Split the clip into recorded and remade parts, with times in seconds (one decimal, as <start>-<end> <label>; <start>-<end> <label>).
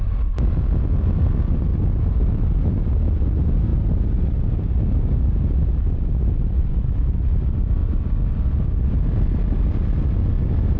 0.0-10.8 recorded